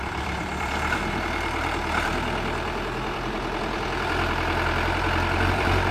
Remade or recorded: remade